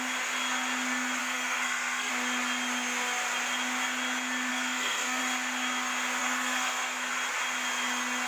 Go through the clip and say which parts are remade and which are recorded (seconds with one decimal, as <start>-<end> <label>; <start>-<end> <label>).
0.0-1.2 recorded; 1.2-2.1 remade; 2.1-4.5 recorded; 4.5-5.2 remade; 5.2-6.2 recorded; 6.2-7.1 remade; 7.1-8.3 recorded